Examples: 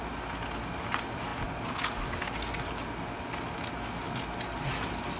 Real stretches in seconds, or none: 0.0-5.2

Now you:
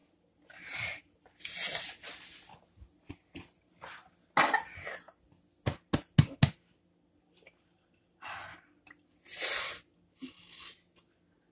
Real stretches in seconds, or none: 0.0-11.5

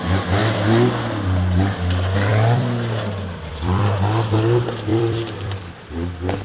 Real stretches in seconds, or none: 0.0-2.3; 3.8-4.9; 5.9-6.4

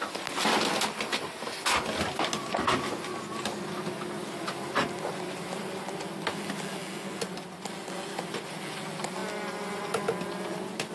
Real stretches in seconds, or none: 0.0-10.9

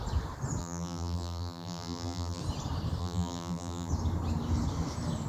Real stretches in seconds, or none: 0.0-0.6; 2.4-3.0; 3.9-5.3

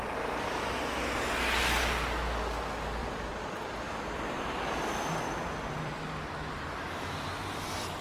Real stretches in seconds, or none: 0.0-3.0; 7.3-8.0

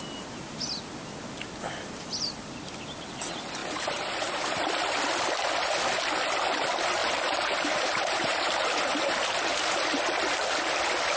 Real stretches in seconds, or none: 0.0-3.6; 4.7-7.0; 8.8-9.5; 10.0-11.2

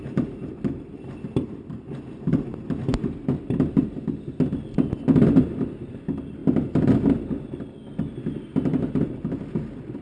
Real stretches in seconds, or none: 0.0-8.7; 9.4-10.0